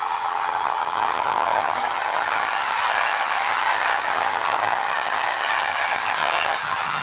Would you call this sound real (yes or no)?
no